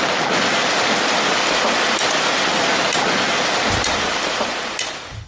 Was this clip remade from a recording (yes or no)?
no